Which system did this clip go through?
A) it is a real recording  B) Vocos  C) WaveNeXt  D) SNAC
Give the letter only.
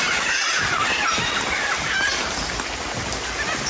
A